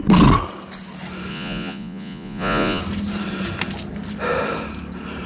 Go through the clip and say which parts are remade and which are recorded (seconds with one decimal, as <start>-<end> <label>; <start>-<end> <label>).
0.0-1.3 recorded; 1.3-2.8 remade; 2.8-5.3 recorded